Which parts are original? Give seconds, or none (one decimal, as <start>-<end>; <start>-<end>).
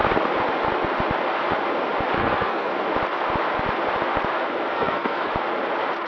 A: 0.0-2.2; 2.7-4.7; 5.3-6.1